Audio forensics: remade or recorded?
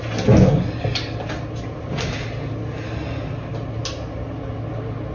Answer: recorded